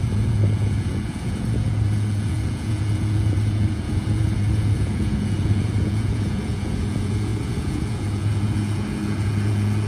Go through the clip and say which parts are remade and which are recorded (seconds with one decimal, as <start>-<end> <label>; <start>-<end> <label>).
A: 0.0-9.9 remade